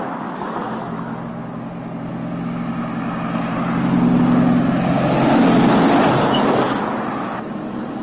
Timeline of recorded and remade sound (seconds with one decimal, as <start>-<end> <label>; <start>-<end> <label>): 0.0-0.6 recorded; 0.6-1.3 remade; 1.3-8.0 recorded